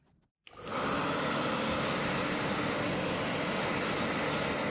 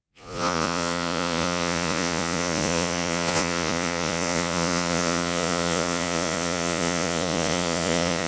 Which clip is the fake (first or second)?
second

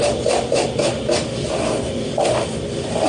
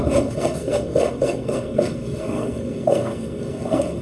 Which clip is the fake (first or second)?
second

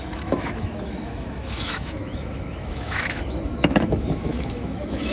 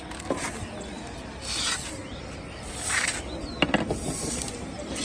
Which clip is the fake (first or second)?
first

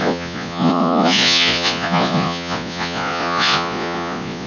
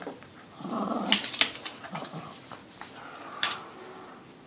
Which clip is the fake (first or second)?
first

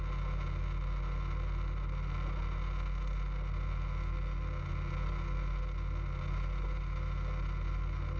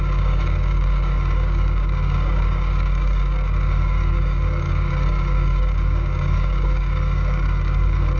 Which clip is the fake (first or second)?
second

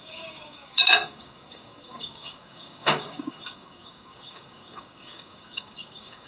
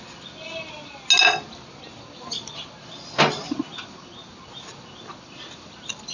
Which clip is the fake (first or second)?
first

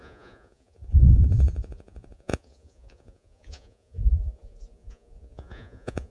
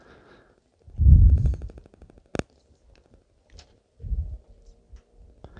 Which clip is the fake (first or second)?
first